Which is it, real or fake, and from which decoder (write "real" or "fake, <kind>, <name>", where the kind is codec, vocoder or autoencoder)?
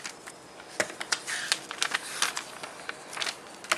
real